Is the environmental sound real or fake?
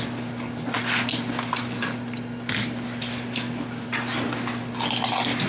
real